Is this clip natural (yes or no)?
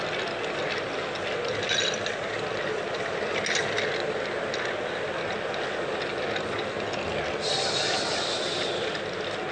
yes